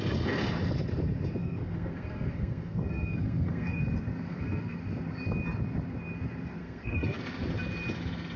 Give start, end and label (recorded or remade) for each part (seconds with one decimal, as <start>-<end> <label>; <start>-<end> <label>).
0.0-1.4 recorded; 1.4-3.8 remade; 3.8-4.3 recorded; 4.3-4.8 remade; 4.8-6.6 recorded; 6.6-7.2 remade; 7.2-8.4 recorded